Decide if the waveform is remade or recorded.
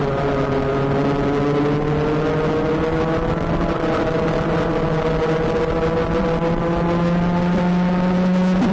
recorded